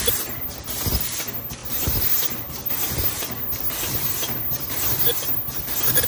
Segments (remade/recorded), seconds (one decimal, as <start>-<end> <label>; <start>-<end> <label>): 0.0-6.1 recorded